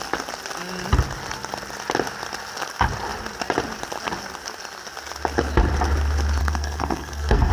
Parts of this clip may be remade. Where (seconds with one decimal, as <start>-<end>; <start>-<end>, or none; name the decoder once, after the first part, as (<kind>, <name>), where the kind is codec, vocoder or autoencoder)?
6.4-7.5 (codec, SNAC)